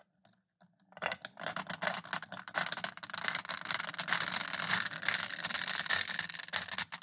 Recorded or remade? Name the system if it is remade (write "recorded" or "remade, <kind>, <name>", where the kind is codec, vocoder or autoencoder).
recorded